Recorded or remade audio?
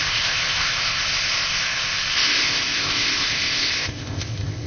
remade